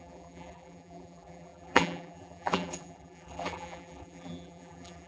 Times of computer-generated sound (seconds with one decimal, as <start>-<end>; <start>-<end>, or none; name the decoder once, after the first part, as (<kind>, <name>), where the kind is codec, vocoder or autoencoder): 0.0-5.1 (vocoder, BigVGAN v2)